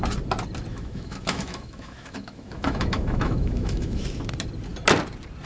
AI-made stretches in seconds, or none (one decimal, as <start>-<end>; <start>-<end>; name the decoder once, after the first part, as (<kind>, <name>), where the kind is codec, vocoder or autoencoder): 0.7-4.0 (autoencoder, DAC-VAE)